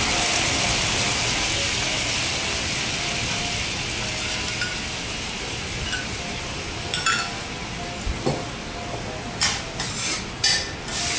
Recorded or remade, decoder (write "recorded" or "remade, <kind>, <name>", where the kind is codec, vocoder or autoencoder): recorded